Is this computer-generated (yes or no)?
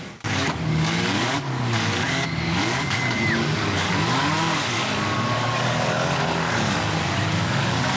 yes